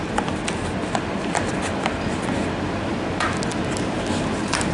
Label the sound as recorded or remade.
recorded